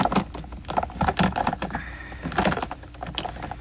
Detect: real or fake real